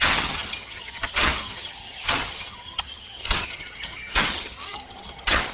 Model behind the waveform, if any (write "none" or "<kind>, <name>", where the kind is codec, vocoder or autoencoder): vocoder, HiFi-GAN